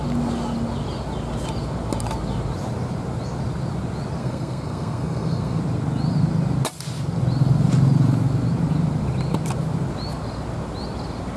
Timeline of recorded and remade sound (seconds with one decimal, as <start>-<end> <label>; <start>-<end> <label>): 0.0-4.2 recorded; 4.2-5.6 remade; 5.6-11.4 recorded